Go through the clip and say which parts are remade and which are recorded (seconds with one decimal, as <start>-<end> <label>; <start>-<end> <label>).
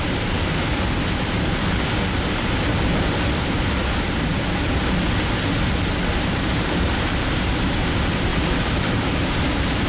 0.0-6.0 recorded; 6.0-7.3 remade; 7.3-8.3 recorded; 8.3-9.3 remade; 9.3-9.9 recorded